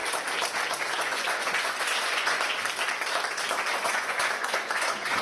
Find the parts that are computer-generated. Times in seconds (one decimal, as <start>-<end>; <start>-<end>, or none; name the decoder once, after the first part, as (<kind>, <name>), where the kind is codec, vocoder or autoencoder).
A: 0.9-2.5 (vocoder, Vocos); 3.8-5.2